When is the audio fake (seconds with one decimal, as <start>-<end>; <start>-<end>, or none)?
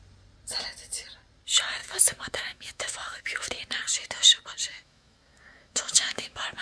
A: 1.8-3.5; 4.7-6.6